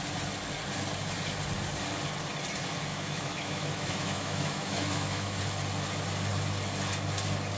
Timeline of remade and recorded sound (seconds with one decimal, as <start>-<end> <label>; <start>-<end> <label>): 0.0-2.9 recorded; 2.9-5.4 remade; 5.4-7.6 recorded